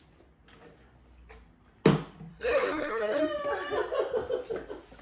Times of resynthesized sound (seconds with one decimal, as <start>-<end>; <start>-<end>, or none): 2.3-3.2

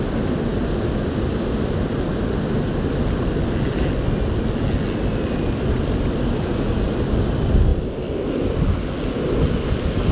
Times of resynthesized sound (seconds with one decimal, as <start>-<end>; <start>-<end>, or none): none

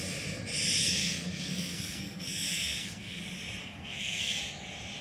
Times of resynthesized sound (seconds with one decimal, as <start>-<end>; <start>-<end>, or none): 0.8-3.2; 3.6-4.4

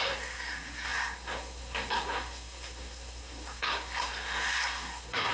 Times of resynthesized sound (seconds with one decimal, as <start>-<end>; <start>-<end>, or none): 0.0-5.3